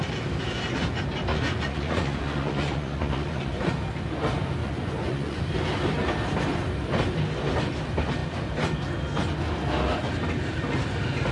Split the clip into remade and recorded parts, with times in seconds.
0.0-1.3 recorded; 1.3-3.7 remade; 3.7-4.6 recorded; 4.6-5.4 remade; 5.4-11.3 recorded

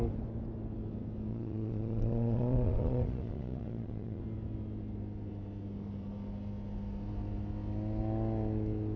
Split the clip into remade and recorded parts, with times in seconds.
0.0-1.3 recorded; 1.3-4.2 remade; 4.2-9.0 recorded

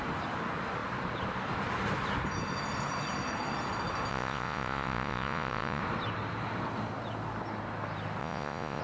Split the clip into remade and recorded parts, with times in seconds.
0.0-4.1 recorded; 4.1-5.8 remade; 5.8-8.2 recorded; 8.2-8.8 remade

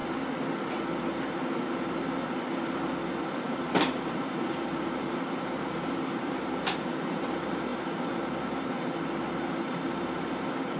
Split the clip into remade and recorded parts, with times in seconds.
0.0-3.2 recorded; 3.2-7.7 remade; 7.7-9.2 recorded; 9.2-10.8 remade

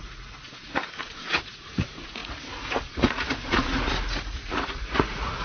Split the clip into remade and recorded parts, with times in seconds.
0.0-5.4 remade

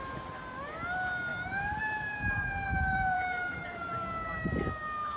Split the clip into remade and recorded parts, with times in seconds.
0.0-1.3 recorded; 1.3-3.9 remade; 3.9-5.2 recorded

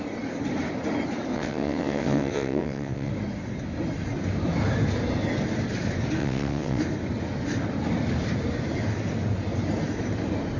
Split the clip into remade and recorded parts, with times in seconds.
0.0-1.3 recorded; 1.3-3.1 remade; 3.1-6.2 recorded; 6.2-6.8 remade; 6.8-10.6 recorded